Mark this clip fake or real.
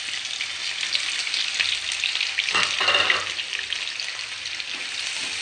real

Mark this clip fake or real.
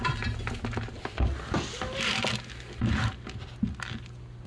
real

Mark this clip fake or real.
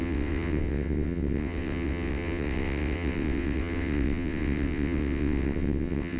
fake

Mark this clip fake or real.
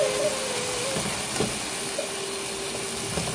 real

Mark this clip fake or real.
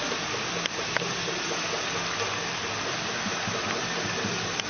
real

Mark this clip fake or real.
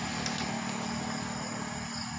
real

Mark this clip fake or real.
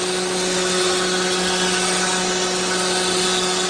real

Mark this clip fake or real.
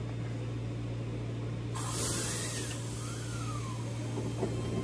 real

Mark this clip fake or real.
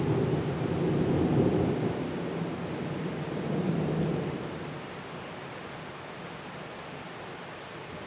real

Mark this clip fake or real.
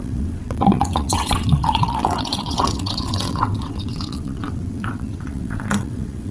fake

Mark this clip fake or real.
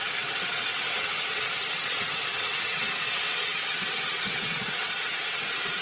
fake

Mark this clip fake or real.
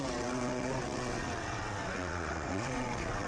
fake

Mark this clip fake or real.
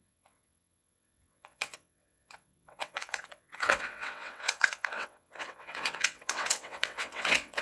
fake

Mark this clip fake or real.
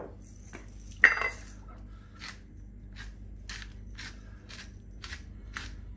real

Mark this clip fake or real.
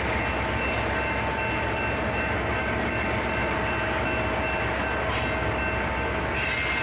real